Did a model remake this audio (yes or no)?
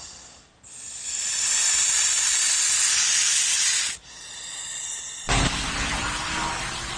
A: no